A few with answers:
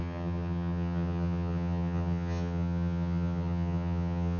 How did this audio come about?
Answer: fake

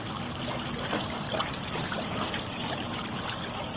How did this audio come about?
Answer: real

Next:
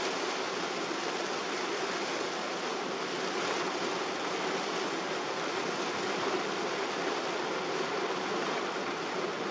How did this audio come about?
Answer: real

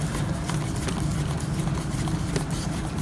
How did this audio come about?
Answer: real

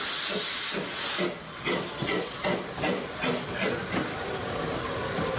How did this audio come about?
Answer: real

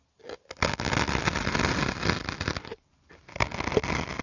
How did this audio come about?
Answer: real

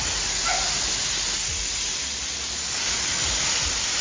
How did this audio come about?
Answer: real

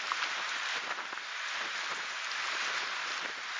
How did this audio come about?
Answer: real